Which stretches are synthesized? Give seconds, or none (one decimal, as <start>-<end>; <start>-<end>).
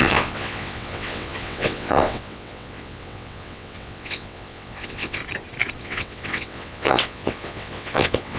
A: 0.0-5.2; 5.8-8.4